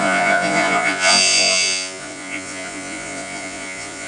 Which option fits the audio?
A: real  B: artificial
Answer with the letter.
B